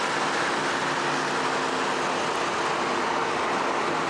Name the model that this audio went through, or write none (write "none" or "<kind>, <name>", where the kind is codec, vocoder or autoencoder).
none